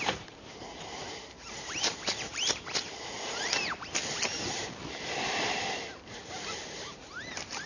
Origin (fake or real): fake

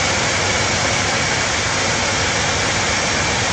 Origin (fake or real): real